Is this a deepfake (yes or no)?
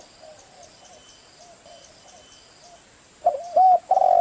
no